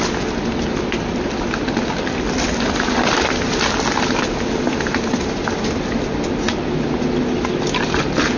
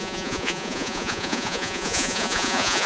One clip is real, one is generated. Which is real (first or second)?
first